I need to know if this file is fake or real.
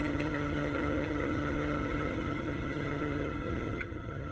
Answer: fake